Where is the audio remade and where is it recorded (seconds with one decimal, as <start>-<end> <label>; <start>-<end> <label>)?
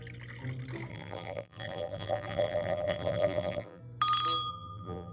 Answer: 0.0-0.9 recorded; 0.9-3.8 remade; 3.8-4.5 recorded; 4.5-5.1 remade